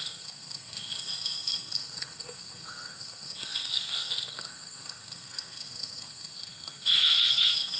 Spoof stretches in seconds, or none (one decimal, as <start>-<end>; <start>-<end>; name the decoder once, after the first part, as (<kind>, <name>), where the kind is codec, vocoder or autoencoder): 0.0-7.8 (codec, SNAC)